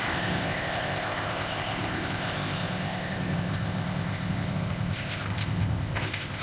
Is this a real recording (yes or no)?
no